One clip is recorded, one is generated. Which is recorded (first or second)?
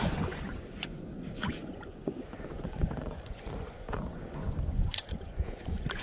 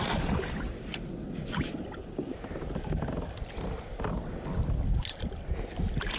second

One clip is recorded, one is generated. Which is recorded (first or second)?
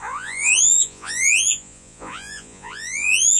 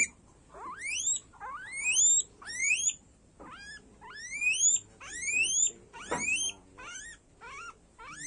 second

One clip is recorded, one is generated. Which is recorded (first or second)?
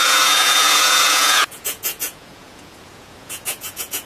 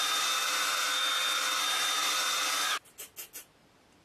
second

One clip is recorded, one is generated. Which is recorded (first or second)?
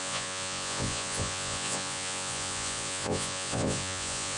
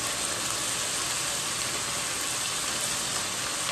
second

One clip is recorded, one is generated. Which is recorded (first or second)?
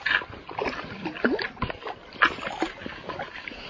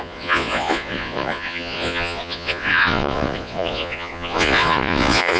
first